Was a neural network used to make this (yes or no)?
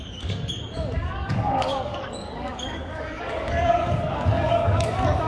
yes